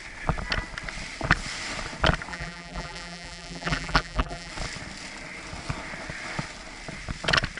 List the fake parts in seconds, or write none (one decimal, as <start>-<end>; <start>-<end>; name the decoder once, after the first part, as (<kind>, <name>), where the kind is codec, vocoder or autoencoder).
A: 2.3-4.5 (vocoder, BigVGAN v2)